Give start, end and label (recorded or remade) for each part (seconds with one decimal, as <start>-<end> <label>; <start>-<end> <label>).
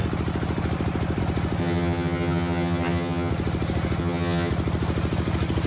0.0-1.6 recorded; 1.6-3.3 remade; 3.3-4.0 recorded; 4.0-4.5 remade; 4.5-5.7 recorded